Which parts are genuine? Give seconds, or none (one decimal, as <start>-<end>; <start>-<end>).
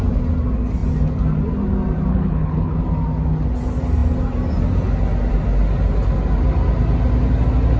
0.0-2.1; 2.8-7.8